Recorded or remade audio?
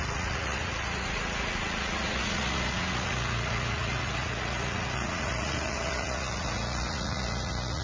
remade